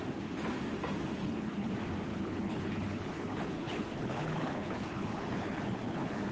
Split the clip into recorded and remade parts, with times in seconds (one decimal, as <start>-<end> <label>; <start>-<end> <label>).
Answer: 0.0-1.2 recorded; 1.2-1.7 remade; 1.7-2.1 recorded; 2.1-6.3 remade